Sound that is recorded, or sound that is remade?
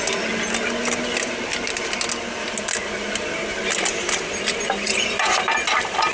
recorded